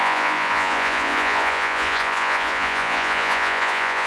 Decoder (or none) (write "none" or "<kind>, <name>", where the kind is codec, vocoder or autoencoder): vocoder, Vocos